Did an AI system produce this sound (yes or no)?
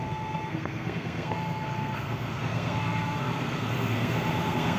yes